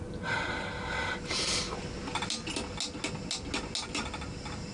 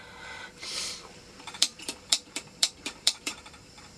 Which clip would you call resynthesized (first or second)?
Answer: second